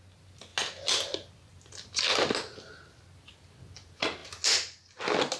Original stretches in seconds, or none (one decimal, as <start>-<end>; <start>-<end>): 0.0-5.4